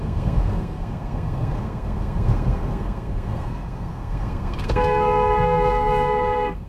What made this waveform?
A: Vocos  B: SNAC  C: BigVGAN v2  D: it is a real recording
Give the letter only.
B